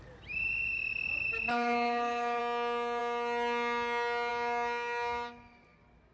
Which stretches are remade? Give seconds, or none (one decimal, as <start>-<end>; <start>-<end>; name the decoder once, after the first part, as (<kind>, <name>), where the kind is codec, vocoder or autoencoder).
1.5-2.4 (codec, SNAC)